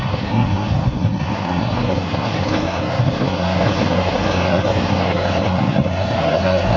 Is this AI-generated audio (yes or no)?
yes